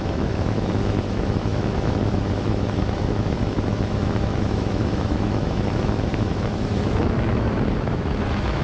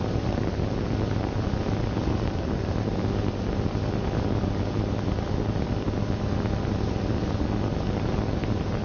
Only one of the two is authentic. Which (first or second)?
second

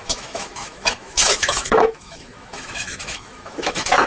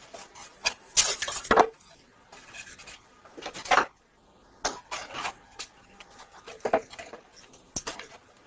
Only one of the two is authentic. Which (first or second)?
second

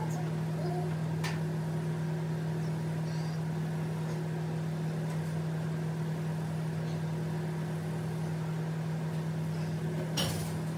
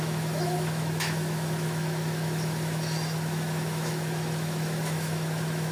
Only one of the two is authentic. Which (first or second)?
first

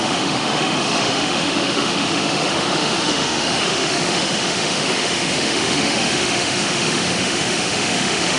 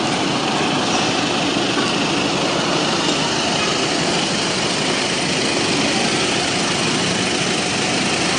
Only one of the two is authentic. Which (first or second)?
second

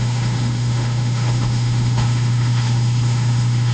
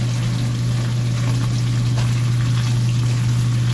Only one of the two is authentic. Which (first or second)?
second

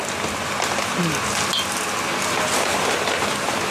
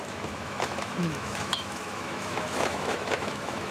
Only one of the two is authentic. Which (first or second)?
first